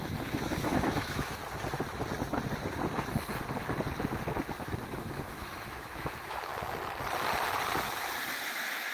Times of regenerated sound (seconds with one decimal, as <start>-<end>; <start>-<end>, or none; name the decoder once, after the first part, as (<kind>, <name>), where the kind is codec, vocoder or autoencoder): 0.0-1.4 (autoencoder, DAC-VAE); 4.6-6.5; 8.4-8.9